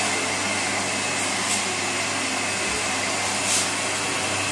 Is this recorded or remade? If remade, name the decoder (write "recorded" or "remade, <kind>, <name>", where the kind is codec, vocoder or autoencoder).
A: recorded